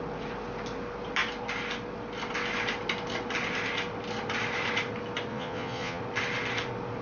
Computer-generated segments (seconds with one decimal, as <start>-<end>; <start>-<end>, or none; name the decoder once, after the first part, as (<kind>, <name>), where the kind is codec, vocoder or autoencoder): 5.3-6.0 (vocoder, Vocos)